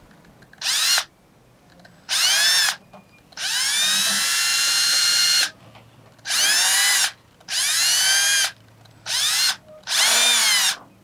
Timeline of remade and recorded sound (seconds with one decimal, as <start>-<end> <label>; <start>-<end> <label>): 0.0-4.5 recorded; 4.5-5.6 remade; 5.6-11.0 recorded